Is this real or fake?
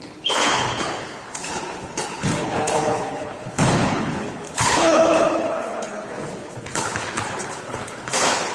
fake